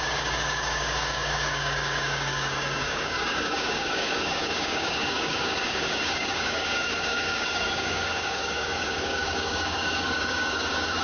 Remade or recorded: remade